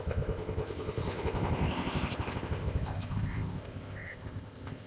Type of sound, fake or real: fake